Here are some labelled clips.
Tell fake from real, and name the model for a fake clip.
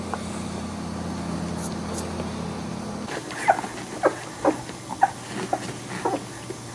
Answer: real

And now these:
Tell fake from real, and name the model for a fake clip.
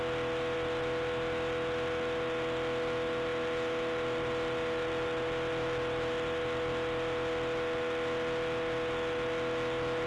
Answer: real